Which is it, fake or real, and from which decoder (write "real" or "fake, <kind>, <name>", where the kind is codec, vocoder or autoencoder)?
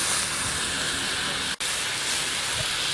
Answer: real